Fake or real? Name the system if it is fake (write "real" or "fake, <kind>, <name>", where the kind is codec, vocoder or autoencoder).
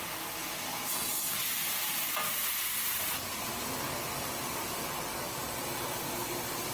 real